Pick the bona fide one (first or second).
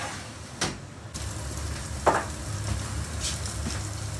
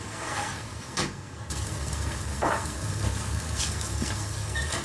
first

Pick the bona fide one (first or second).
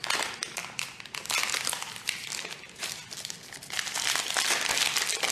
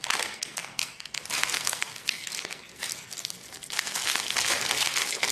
first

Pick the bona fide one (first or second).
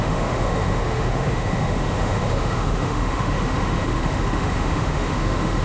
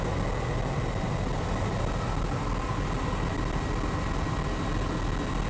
second